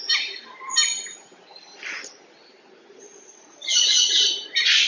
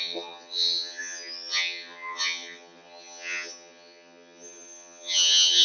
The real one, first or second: first